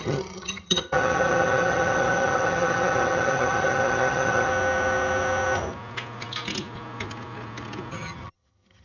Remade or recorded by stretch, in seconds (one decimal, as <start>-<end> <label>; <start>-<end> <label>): 0.0-4.5 remade; 4.5-7.9 recorded; 7.9-8.8 remade